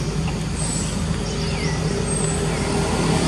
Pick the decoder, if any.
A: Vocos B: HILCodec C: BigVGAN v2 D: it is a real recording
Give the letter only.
D